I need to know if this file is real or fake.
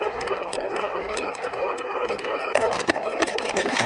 fake